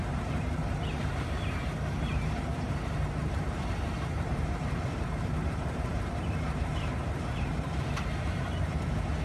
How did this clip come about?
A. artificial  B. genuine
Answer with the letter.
A